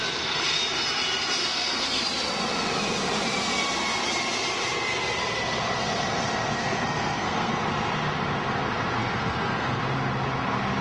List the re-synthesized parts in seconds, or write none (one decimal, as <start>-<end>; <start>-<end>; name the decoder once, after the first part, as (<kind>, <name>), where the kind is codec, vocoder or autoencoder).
1.4-2.0 (codec, SNAC); 6.6-7.6; 9.0-9.8